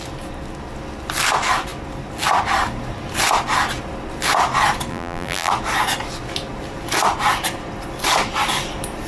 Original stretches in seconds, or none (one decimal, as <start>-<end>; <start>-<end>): 0.0-4.9; 5.5-9.1